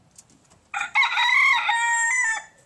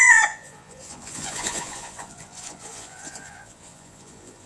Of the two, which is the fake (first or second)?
second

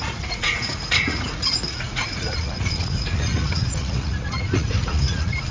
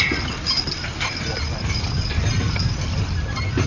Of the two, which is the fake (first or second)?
first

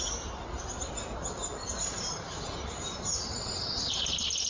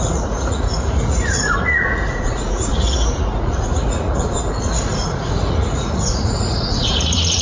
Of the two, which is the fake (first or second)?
second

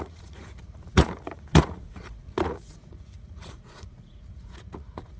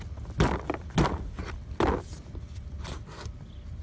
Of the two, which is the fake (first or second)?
first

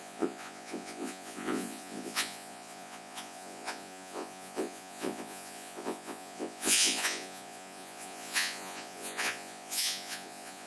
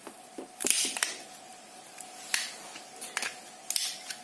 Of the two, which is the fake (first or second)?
first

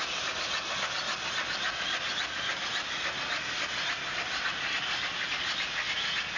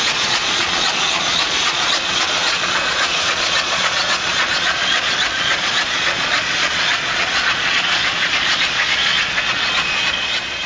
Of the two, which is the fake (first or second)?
second